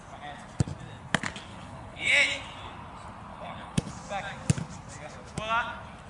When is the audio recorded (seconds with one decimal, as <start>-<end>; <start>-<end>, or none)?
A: 0.0-1.5; 2.1-3.3; 3.9-6.1